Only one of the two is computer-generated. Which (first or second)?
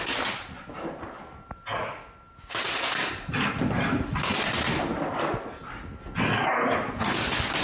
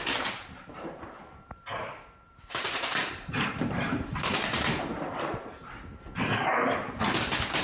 second